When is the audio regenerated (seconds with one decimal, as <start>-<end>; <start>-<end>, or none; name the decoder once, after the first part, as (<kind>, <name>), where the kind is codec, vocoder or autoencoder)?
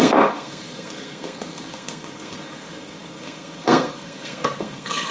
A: 0.0-5.1 (codec, SNAC)